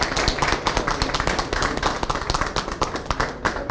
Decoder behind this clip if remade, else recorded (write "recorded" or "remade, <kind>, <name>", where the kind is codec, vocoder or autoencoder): recorded